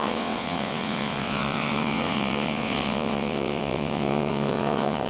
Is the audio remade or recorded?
remade